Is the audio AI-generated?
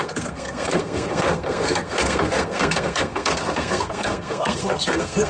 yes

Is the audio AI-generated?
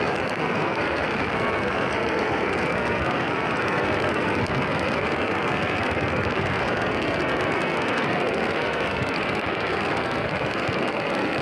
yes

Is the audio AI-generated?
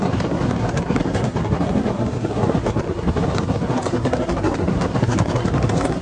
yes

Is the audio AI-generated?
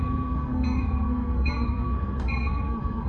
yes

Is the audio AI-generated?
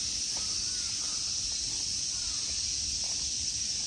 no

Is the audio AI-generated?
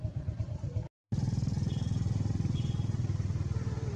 no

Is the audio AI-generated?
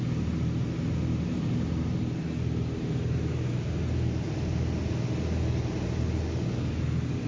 no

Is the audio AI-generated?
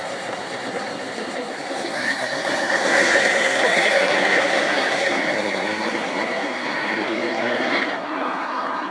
yes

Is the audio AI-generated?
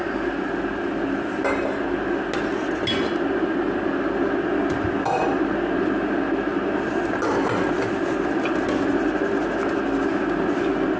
no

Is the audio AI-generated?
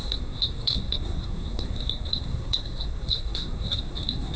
yes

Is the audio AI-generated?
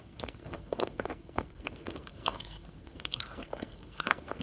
yes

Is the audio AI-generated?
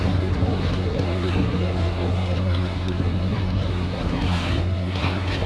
yes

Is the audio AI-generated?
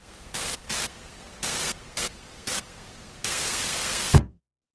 yes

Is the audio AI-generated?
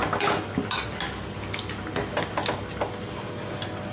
no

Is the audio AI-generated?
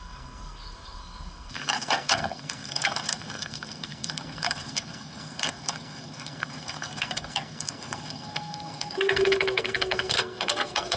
yes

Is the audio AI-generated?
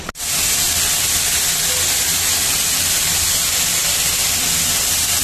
no